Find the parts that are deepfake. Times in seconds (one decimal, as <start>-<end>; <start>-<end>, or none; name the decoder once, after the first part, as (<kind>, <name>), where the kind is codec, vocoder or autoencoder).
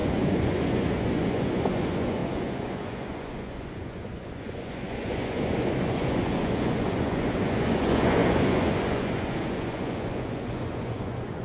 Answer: 0.0-11.4 (vocoder, Vocos)